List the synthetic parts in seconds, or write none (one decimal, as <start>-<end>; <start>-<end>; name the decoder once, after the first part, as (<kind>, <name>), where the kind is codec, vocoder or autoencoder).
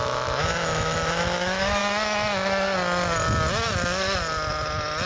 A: 0.0-1.8 (autoencoder, DAC-VAE)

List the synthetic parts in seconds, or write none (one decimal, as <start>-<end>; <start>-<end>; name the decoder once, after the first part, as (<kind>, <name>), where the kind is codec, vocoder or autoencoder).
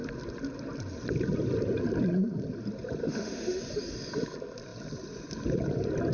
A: 3.0-3.6 (autoencoder, DAC-VAE)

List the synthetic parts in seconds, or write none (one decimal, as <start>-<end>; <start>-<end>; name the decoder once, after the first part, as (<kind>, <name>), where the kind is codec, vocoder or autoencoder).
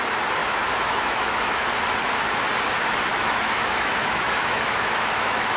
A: 0.4-1.7 (autoencoder, DAC-VAE); 3.1-5.6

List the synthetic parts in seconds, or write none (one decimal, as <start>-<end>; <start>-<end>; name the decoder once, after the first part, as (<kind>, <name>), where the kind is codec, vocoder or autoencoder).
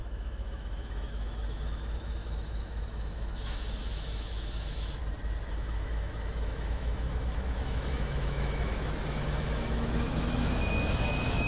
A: 0.0-5.0 (autoencoder, DAC-VAE); 5.5-11.5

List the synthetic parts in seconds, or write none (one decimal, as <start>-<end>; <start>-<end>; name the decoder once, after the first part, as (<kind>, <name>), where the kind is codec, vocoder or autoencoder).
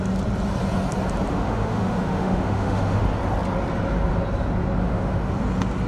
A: 1.3-3.0 (autoencoder, DAC-VAE); 4.8-5.3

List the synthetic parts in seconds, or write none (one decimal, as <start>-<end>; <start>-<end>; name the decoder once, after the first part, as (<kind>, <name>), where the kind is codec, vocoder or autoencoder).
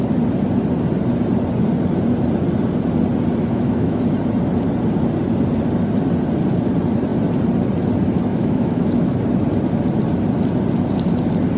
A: 3.5-4.0 (autoencoder, DAC-VAE); 8.3-9.2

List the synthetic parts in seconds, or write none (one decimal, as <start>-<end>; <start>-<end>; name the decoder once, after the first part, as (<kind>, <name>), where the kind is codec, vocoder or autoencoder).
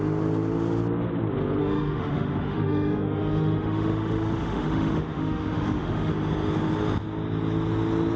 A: 1.6-6.1 (autoencoder, DAC-VAE)